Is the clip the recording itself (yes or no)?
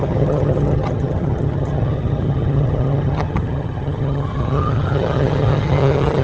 no